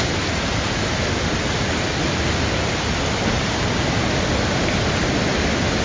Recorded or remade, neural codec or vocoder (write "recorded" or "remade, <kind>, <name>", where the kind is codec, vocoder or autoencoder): recorded